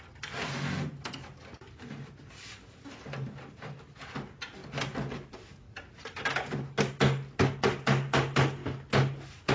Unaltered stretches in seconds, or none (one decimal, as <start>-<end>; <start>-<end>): 0.0-9.5